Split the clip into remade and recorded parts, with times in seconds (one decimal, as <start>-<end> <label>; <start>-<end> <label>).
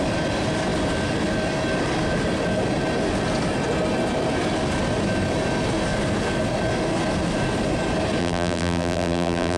0.0-8.2 recorded; 8.2-9.6 remade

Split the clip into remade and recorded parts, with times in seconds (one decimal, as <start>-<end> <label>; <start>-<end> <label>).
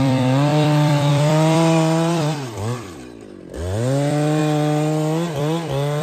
0.0-4.4 remade; 4.4-5.3 recorded; 5.3-6.0 remade